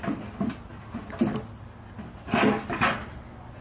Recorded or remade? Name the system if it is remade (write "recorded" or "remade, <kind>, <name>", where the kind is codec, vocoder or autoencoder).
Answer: recorded